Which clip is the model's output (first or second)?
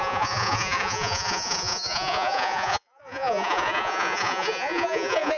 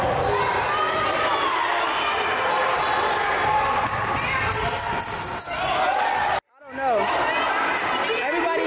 first